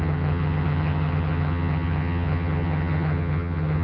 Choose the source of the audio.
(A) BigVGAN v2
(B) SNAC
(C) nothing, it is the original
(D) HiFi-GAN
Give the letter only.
D